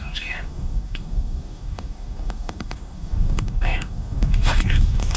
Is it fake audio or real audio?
fake